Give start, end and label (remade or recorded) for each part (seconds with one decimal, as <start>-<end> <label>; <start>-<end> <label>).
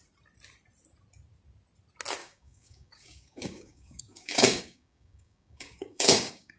0.0-2.2 recorded; 2.2-6.6 remade